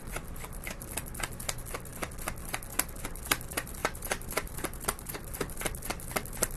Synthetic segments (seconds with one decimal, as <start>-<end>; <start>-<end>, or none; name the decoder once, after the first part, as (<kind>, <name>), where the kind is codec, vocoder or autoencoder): 0.0-1.3 (vocoder, BigVGAN v2); 3.8-6.6